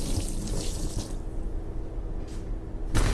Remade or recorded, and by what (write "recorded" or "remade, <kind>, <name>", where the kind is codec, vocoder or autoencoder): recorded